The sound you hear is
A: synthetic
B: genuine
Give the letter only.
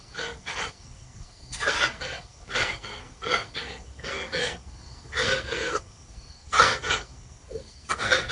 A